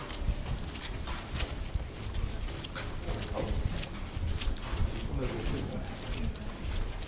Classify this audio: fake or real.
real